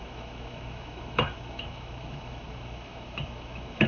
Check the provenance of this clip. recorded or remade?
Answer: remade